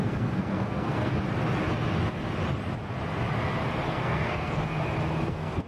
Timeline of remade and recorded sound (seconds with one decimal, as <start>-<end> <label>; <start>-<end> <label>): 0.0-1.1 remade; 1.1-3.9 recorded; 3.9-4.6 remade; 4.6-5.3 recorded; 5.3-5.7 remade